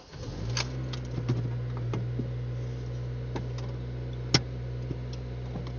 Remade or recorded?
recorded